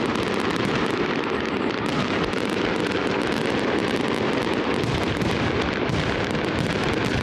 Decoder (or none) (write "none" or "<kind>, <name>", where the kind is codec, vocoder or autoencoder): none